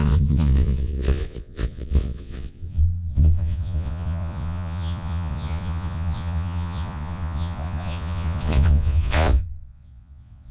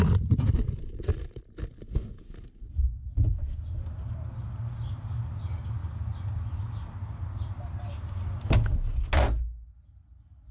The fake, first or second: first